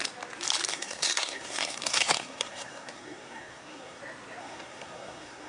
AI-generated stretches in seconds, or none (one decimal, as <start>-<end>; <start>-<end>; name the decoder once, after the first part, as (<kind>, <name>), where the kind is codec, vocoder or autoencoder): 0.7-4.0 (codec, SNAC); 4.4-5.5